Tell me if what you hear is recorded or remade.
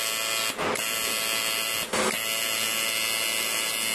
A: recorded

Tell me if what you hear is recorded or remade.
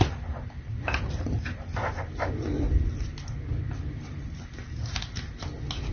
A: recorded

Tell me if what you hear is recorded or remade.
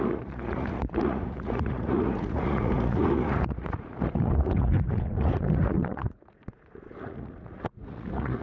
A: remade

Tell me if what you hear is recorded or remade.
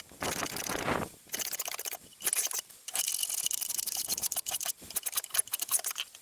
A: recorded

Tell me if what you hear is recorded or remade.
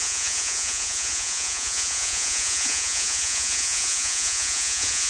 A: remade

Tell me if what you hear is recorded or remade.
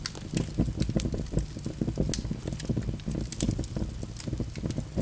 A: recorded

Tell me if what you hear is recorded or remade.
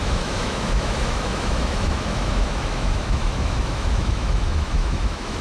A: remade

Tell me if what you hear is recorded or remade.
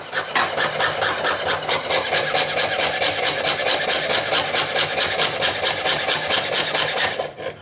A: recorded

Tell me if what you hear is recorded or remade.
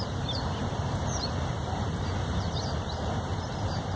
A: remade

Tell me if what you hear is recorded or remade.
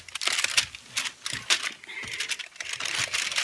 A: recorded